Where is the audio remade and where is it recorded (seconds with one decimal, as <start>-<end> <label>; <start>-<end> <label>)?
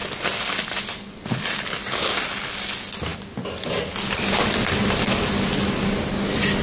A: 0.0-6.6 recorded